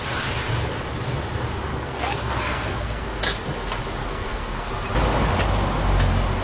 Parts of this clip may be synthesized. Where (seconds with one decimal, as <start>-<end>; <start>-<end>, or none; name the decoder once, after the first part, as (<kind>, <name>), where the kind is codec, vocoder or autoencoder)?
1.7-3.1 (codec, SNAC); 4.0-4.7